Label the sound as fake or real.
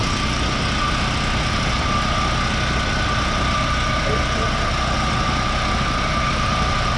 real